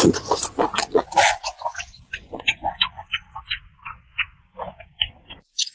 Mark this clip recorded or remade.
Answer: remade